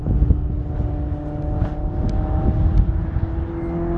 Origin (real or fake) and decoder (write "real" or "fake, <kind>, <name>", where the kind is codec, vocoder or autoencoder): real